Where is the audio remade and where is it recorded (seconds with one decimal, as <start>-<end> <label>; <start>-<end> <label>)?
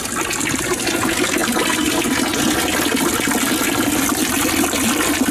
0.0-5.3 recorded